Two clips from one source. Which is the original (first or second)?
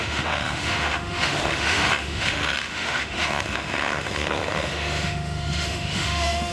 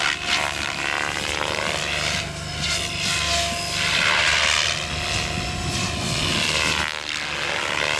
second